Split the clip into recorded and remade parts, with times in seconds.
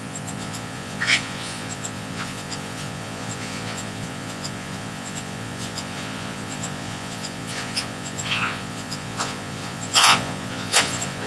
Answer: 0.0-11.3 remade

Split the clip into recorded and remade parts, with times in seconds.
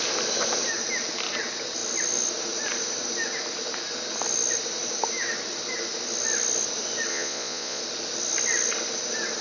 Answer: 0.0-7.1 recorded; 7.1-7.8 remade; 7.8-9.4 recorded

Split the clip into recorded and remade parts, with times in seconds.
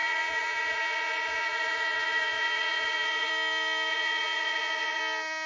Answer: 0.0-3.3 remade; 3.3-3.9 recorded; 3.9-5.0 remade; 5.0-5.5 recorded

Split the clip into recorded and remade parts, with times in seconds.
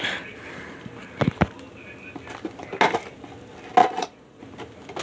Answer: 0.0-3.8 recorded; 3.8-4.4 remade; 4.4-5.0 recorded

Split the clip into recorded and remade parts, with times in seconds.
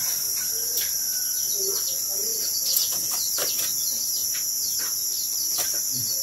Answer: 0.0-2.3 recorded; 2.3-3.1 remade; 3.1-4.2 recorded; 4.2-4.8 remade; 4.8-6.2 recorded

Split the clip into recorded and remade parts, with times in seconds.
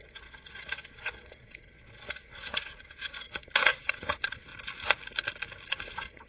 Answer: 0.0-4.5 remade; 4.5-5.8 recorded; 5.8-6.3 remade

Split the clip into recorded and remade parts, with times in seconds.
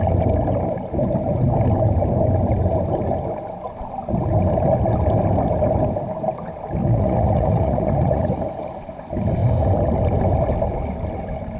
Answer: 0.0-6.8 recorded; 6.8-8.4 remade; 8.4-11.6 recorded